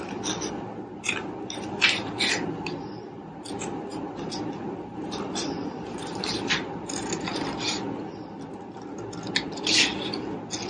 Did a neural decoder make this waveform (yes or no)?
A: no